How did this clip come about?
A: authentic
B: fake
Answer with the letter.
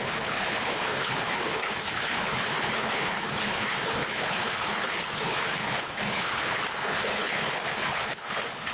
B